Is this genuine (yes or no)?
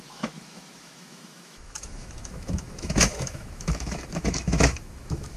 no